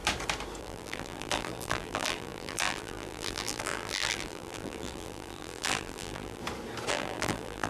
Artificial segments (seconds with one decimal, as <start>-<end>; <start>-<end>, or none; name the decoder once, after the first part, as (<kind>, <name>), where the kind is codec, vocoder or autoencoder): 0.6-6.4 (vocoder, BigVGAN v2); 6.9-7.7

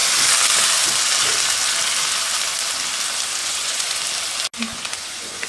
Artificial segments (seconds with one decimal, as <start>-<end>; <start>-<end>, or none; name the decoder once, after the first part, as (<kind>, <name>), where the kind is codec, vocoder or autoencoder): 3.4-4.0 (vocoder, Vocos); 4.7-5.5

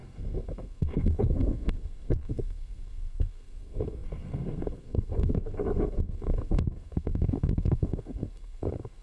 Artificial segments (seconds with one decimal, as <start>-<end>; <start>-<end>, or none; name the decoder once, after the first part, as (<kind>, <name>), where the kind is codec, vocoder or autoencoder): 0.0-9.0 (codec, SNAC)

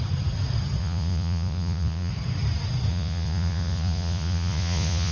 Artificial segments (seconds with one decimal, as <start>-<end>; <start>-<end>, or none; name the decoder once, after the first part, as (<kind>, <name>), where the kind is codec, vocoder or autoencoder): 0.8-2.1 (vocoder, Vocos); 2.9-5.1

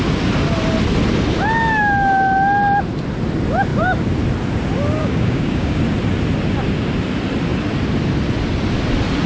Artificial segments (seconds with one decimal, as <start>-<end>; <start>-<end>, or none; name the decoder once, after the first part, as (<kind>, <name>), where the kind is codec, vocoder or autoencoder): 5.0-5.8 (codec, DAC)

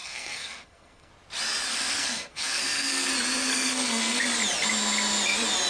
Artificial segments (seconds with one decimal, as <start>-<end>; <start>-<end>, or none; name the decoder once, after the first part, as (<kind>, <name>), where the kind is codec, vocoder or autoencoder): 0.0-1.1 (codec, SNAC); 1.7-3.1; 3.5-4.2

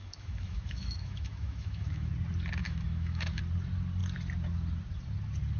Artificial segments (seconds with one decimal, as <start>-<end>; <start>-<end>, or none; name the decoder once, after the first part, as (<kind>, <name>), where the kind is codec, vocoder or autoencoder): 0.0-2.1 (autoencoder, DAC-VAE); 2.6-3.4